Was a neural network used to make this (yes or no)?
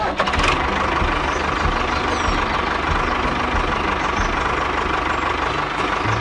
no